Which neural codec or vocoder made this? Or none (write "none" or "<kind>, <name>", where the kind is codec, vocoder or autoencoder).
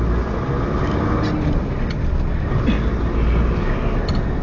none